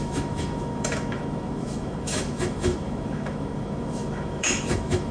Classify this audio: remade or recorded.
remade